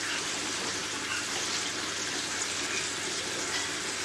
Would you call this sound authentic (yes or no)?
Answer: yes